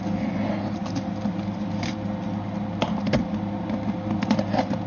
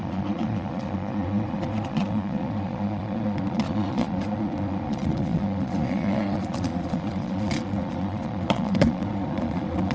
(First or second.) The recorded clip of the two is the first